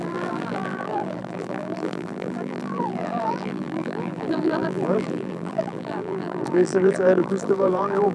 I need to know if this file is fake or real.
fake